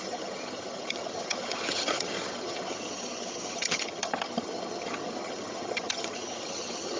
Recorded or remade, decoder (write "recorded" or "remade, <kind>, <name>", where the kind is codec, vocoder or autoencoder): remade, vocoder, HiFi-GAN